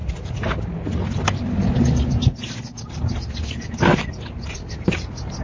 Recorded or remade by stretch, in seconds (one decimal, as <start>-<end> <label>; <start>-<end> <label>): 0.0-5.4 recorded